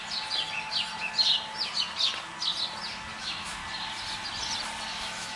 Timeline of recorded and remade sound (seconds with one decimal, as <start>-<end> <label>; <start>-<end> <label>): 0.0-3.2 recorded; 3.2-3.6 remade; 3.6-4.9 recorded; 4.9-5.4 remade